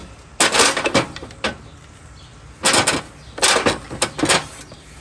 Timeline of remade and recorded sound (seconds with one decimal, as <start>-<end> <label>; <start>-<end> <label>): 0.0-5.0 recorded